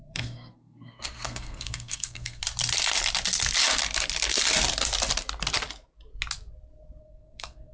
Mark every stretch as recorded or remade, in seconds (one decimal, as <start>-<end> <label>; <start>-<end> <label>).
0.0-2.4 remade; 2.4-7.0 recorded; 7.0-7.7 remade